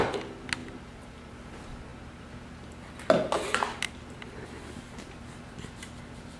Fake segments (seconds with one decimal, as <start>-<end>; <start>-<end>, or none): none